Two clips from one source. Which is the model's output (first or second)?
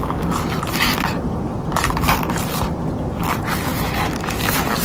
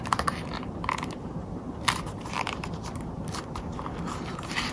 second